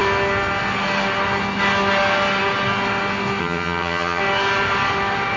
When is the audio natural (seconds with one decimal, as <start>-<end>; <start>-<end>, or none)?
0.0-3.4; 4.2-5.4

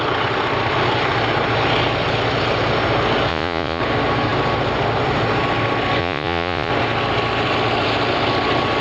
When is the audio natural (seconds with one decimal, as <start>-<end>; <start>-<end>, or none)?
0.0-3.3; 3.8-6.0; 6.7-8.8

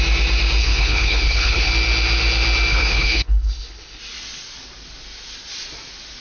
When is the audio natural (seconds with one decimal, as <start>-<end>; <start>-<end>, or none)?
0.0-0.6; 1.7-2.7; 4.0-6.2

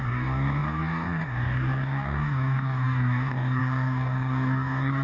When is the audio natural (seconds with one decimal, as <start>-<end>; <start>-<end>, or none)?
none